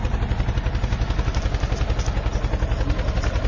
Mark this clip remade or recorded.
recorded